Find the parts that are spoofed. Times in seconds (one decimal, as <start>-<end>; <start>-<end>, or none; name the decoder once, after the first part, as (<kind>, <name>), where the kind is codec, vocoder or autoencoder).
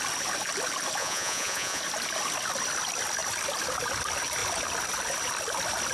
1.0-1.8 (vocoder, Vocos)